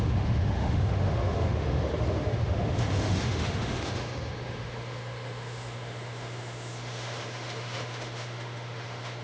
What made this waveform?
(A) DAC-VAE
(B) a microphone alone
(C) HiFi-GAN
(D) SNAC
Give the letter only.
A